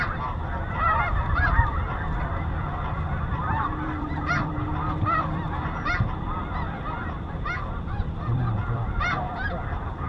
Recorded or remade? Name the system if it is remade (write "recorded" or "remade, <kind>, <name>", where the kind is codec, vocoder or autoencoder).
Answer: remade, vocoder, BigVGAN v2